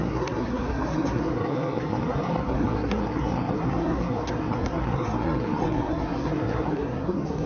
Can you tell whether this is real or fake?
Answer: fake